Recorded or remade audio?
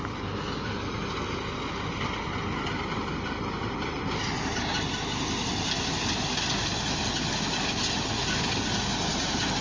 recorded